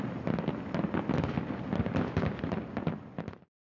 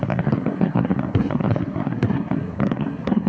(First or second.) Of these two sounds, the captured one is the first